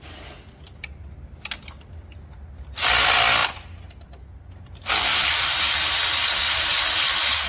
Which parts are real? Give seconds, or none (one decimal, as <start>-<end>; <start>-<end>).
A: 0.0-5.1; 5.7-7.5